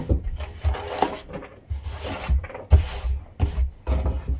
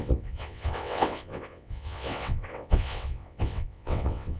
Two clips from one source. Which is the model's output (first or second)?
second